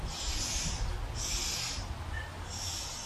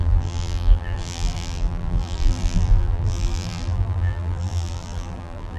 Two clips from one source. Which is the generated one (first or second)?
second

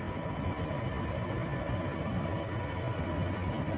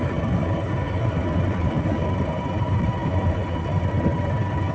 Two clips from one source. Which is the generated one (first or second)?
second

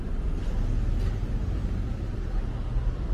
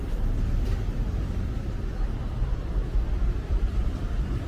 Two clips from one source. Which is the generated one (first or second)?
second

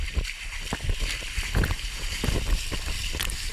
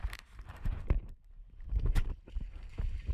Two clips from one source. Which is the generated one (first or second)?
second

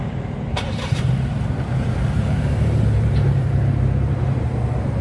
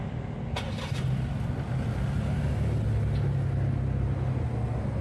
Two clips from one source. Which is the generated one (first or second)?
first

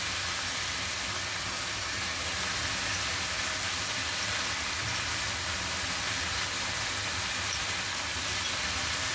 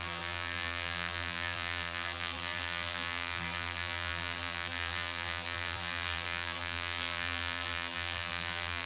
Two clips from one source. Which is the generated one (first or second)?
second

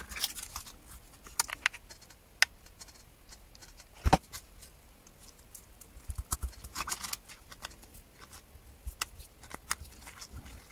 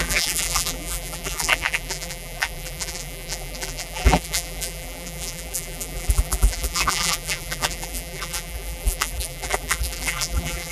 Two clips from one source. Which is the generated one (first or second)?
second